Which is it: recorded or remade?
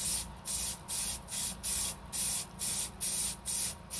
recorded